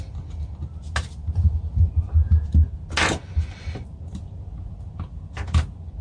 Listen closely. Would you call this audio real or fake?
real